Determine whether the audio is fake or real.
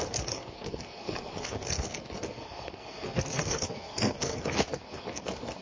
fake